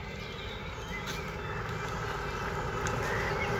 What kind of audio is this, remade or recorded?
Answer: recorded